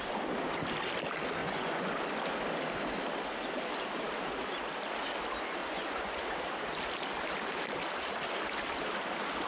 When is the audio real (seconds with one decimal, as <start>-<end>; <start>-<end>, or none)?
0.0-1.4; 1.9-5.6; 6.2-9.5